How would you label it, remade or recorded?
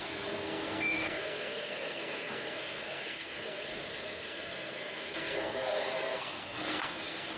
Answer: remade